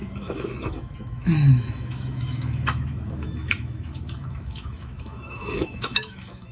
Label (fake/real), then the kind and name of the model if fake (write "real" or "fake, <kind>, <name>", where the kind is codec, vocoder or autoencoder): fake, autoencoder, DAC-VAE